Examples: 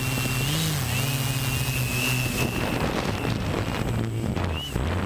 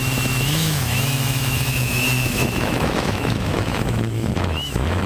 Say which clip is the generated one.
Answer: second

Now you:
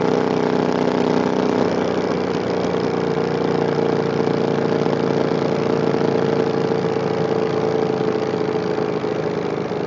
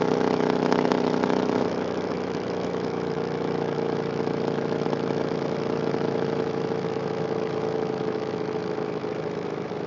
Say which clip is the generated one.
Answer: second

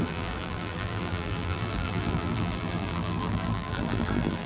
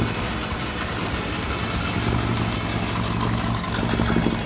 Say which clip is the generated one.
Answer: first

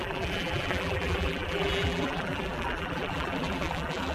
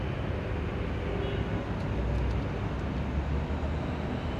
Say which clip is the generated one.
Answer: first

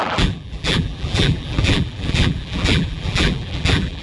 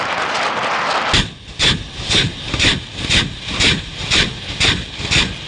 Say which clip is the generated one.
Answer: first